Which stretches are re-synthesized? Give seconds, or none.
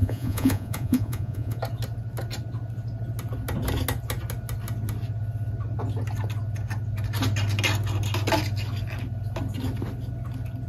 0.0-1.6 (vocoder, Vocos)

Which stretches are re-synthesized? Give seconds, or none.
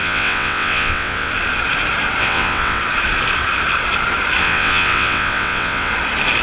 0.0-1.3 (vocoder, WaveNeXt); 2.2-2.8; 4.4-5.9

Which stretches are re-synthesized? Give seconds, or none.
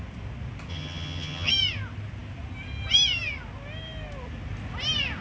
0.7-1.5 (vocoder, HiFi-GAN)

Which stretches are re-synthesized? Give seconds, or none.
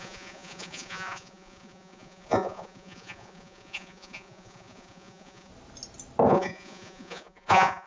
0.0-5.5 (vocoder, Vocos); 6.3-7.9